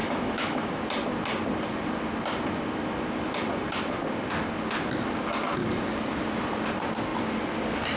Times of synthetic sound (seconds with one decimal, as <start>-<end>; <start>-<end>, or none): 0.0-0.8